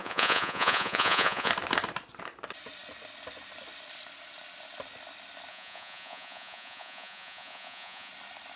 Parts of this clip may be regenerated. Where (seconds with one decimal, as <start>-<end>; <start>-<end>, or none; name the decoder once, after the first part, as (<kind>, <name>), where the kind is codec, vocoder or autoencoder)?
0.0-1.5 (vocoder, Vocos); 5.5-8.1

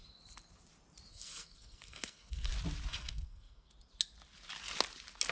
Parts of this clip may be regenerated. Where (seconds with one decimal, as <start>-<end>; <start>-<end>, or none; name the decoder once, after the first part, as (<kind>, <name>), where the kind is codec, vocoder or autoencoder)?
1.1-2.5 (codec, SNAC); 2.9-3.7

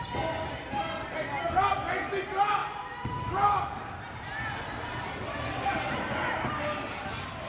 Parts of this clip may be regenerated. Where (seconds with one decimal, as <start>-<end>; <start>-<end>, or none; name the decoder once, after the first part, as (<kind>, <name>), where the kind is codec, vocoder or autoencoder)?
none